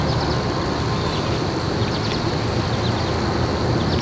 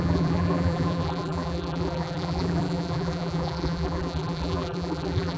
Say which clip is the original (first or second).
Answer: first